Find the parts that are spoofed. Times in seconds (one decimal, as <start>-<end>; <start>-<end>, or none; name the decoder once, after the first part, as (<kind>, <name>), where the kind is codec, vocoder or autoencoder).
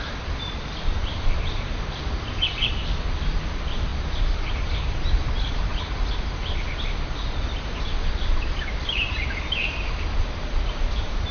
none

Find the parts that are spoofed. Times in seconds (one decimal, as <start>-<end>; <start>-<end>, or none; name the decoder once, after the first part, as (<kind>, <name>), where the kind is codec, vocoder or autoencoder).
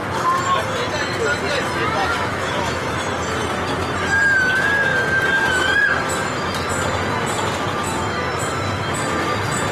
2.0-2.9 (autoencoder, DAC-VAE)